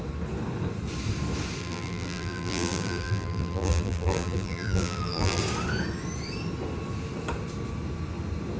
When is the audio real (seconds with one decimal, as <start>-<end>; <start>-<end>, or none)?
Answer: 0.0-1.6; 5.4-8.6